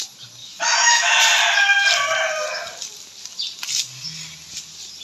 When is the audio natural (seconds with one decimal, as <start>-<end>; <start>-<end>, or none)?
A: 0.0-0.4; 1.2-5.0